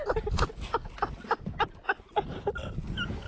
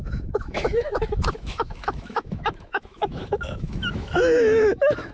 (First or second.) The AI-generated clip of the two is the second